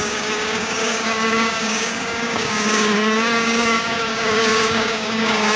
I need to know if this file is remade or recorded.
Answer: remade